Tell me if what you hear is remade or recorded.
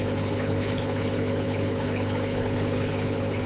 remade